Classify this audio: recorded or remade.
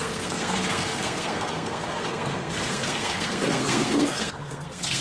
remade